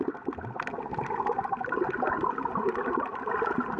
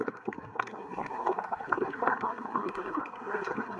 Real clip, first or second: first